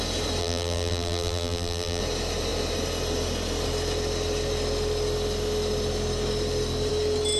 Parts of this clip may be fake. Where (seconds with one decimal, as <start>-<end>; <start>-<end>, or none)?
0.4-2.0